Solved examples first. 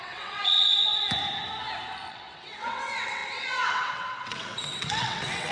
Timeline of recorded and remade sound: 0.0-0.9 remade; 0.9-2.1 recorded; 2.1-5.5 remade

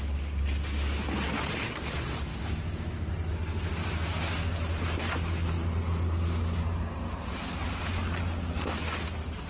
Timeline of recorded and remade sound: 0.0-2.3 recorded; 2.3-3.1 remade; 3.1-9.5 recorded